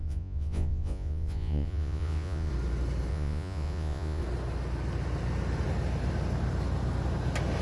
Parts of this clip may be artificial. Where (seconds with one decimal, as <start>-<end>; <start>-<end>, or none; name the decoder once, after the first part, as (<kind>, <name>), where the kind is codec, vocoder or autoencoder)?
0.0-2.5 (vocoder, Vocos); 3.1-4.2

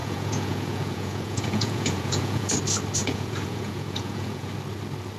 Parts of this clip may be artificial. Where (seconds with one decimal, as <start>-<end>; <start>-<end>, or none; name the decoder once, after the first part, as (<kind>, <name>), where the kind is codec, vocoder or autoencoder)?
0.0-2.5 (vocoder, Vocos); 3.0-4.5

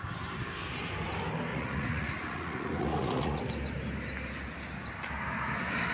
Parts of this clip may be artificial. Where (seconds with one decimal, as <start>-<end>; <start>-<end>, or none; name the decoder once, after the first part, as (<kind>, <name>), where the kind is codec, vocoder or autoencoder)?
1.5-3.4 (vocoder, Vocos)